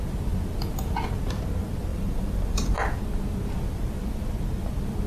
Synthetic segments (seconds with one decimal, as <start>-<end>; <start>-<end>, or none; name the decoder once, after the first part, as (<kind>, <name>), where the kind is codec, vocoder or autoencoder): 1.9-3.0 (vocoder, BigVGAN v2)